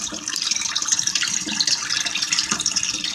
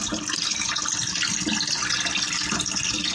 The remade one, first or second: first